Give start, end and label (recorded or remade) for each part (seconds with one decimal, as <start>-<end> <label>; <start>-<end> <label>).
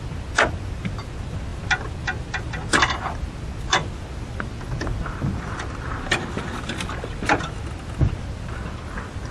0.0-9.3 recorded